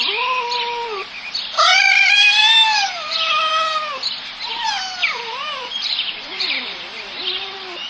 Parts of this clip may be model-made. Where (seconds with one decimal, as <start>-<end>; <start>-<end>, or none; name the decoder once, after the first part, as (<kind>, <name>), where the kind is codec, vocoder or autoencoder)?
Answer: 1.7-3.5 (vocoder, BigVGAN v2); 5.0-7.2